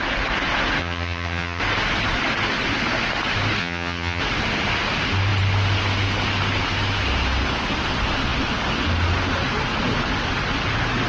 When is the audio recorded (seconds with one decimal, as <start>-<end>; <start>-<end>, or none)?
0.0-0.8; 1.6-3.6; 4.2-11.1